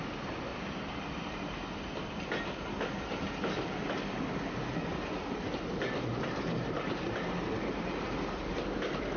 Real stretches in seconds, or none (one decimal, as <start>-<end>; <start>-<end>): 0.0-0.5; 1.0-6.1; 8.5-9.2

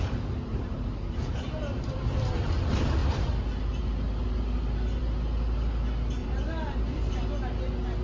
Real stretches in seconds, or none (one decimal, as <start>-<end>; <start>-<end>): 0.0-0.5; 2.0-6.2; 7.3-8.0

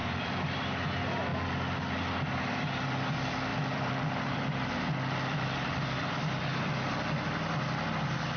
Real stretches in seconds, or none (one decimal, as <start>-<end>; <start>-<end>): 0.6-3.5; 4.7-8.4

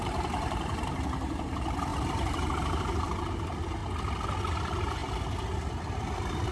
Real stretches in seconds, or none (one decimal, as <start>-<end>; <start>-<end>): 3.8-4.5; 5.0-6.5

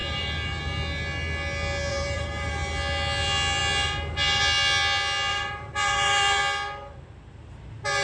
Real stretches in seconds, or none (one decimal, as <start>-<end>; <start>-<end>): 0.6-1.9; 2.5-5.3; 6.4-8.0

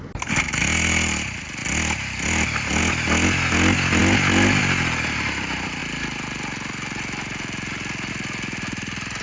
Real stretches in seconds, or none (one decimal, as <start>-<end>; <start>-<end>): 0.0-1.6; 2.8-9.2

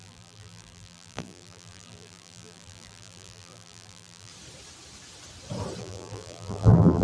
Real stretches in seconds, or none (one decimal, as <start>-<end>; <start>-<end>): 4.3-5.8